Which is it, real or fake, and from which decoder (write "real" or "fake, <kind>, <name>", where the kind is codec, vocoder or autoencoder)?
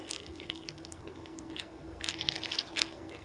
fake, codec, SNAC